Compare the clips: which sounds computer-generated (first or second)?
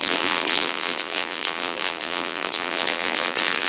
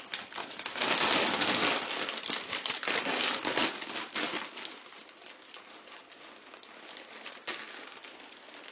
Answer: first